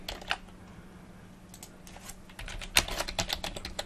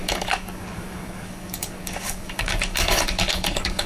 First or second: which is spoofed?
second